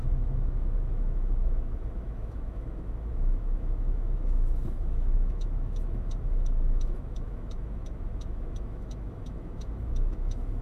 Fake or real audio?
fake